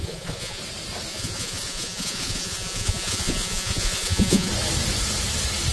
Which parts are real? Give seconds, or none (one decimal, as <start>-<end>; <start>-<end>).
0.6-1.1; 4.5-5.7